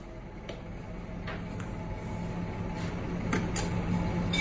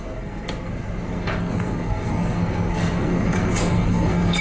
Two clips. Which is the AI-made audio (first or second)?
second